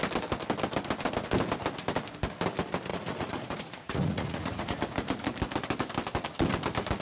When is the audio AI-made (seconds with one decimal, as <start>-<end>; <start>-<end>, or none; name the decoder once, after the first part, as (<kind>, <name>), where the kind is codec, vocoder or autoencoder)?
2.9-4.8 (vocoder, Vocos)